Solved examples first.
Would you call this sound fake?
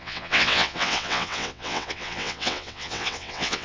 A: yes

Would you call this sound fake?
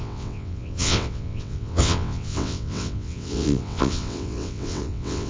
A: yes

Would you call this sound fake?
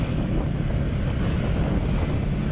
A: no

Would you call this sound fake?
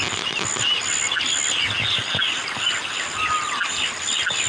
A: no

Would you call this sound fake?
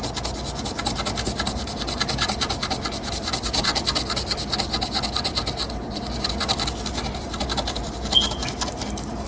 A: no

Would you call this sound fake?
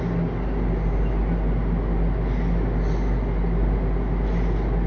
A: no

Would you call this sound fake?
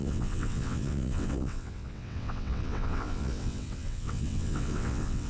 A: yes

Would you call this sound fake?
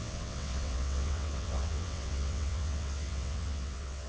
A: yes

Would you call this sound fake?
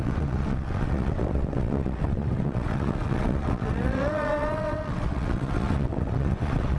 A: yes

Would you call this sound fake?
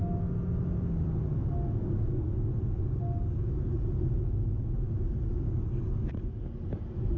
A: no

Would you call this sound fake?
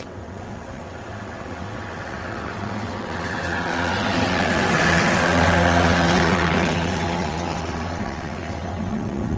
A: yes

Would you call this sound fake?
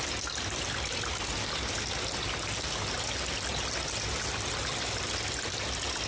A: no